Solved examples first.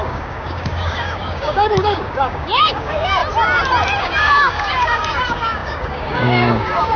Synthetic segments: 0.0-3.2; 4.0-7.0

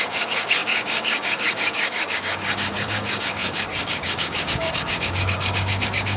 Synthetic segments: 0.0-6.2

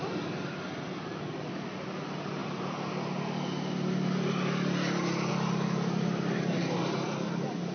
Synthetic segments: none

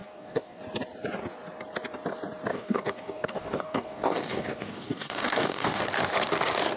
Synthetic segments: 0.0-0.6; 2.5-5.8

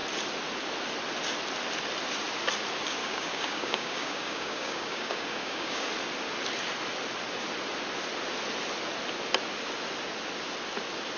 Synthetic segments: 3.0-5.9

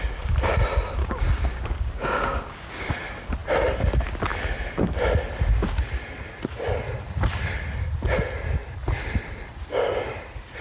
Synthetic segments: 1.0-2.9

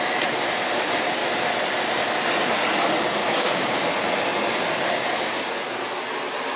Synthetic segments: 3.2-3.8